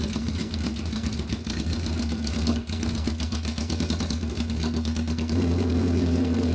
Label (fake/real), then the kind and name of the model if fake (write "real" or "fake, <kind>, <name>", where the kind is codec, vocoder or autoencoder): fake, codec, SNAC